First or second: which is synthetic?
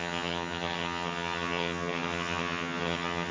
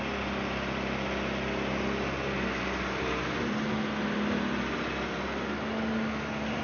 first